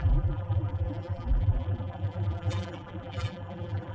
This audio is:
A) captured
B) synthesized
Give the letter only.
B